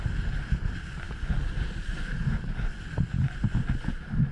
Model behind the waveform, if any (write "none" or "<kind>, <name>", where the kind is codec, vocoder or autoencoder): vocoder, BigVGAN v2